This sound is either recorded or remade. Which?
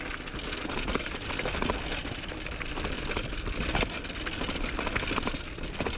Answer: recorded